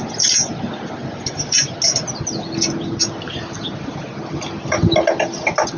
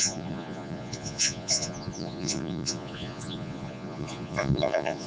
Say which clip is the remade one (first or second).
second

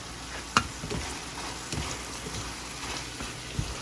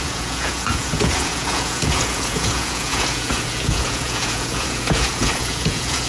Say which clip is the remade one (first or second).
second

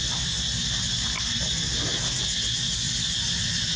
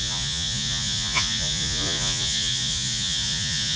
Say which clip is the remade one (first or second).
second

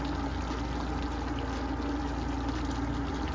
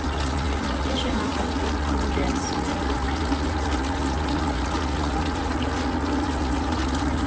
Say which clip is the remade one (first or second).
second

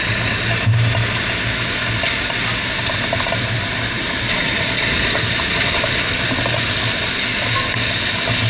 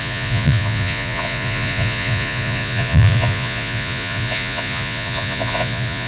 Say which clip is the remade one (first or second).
second